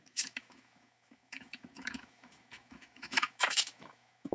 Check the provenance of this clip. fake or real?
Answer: fake